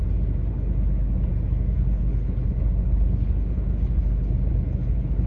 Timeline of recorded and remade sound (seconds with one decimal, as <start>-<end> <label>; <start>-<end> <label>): 0.0-0.5 recorded; 0.5-5.3 remade